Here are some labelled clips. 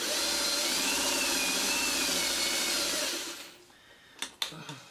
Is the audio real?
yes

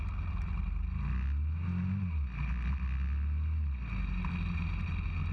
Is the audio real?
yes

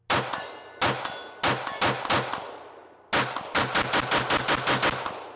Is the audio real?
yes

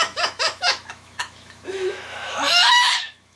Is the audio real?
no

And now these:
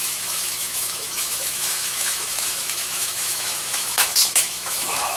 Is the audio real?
no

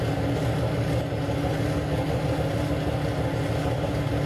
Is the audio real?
yes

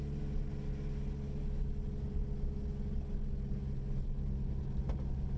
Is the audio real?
yes